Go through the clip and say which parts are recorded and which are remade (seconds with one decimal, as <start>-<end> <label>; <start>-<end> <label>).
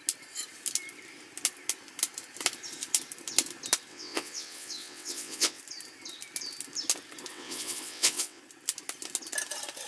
0.0-3.9 recorded; 3.9-5.6 remade; 5.6-7.3 recorded; 7.3-8.4 remade; 8.4-9.9 recorded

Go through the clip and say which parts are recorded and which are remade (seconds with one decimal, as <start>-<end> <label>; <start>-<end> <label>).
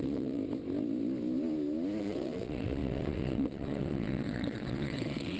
0.0-0.4 remade; 0.4-2.0 recorded; 2.0-5.4 remade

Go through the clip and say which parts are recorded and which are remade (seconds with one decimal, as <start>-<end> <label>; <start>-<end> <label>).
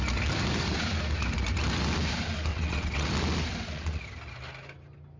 0.0-2.5 recorded; 2.5-3.1 remade; 3.1-3.5 recorded; 3.5-4.0 remade; 4.0-5.2 recorded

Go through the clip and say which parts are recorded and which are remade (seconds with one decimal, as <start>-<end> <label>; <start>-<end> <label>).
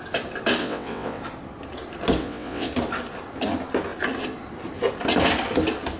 0.0-0.6 recorded; 0.6-1.2 remade; 1.2-2.2 recorded; 2.2-2.7 remade; 2.7-6.0 recorded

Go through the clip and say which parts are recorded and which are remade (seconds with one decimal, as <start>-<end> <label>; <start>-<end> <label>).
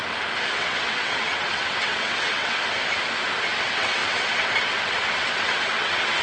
0.0-0.5 recorded; 0.5-2.6 remade; 2.6-3.4 recorded; 3.4-6.2 remade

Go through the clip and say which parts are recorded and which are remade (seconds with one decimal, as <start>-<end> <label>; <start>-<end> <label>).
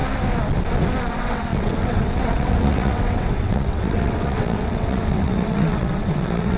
0.0-1.1 recorded; 1.1-6.6 remade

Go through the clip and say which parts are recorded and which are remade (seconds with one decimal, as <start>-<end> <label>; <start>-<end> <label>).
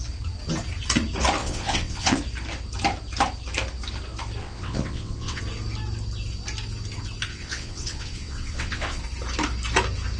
0.0-1.4 recorded; 1.4-2.2 remade; 2.2-4.4 recorded; 4.4-5.4 remade; 5.4-7.3 recorded; 7.3-9.0 remade; 9.0-10.2 recorded